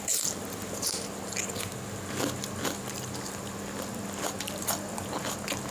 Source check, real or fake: real